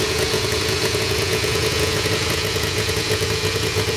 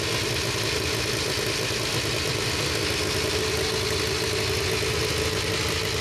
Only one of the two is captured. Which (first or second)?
second